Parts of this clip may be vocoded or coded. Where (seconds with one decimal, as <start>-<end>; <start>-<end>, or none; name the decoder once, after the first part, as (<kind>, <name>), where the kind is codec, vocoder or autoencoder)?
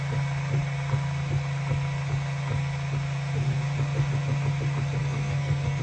5.0-5.8 (codec, SNAC)